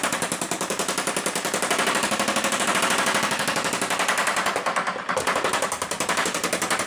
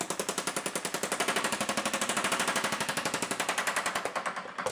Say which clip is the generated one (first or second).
first